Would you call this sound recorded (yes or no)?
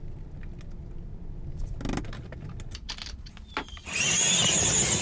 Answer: yes